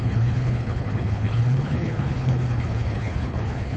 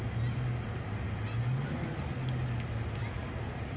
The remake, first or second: first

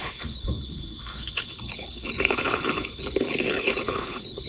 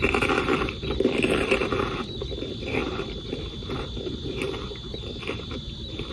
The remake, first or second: first